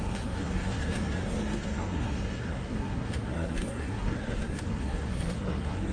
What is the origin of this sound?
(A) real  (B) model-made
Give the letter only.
B